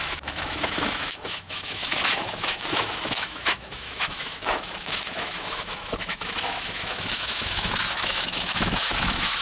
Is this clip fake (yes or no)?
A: yes